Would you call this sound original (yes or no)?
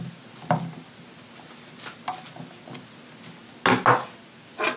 yes